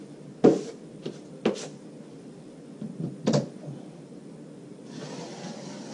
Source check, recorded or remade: recorded